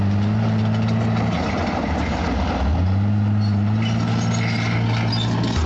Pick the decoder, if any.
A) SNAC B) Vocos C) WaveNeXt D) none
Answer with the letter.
D